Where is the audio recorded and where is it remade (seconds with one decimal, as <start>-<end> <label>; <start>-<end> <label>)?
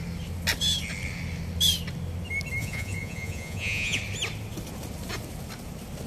0.0-2.6 recorded; 2.6-4.0 remade; 4.0-6.1 recorded